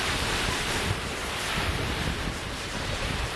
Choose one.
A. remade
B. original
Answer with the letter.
A